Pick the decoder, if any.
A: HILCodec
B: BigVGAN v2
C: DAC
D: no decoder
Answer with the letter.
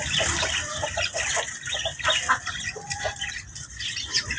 D